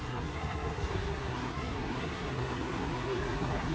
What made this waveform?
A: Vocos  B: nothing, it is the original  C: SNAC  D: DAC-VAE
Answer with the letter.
C